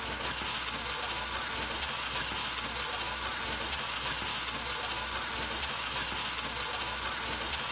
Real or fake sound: real